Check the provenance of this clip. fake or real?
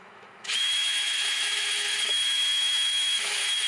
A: fake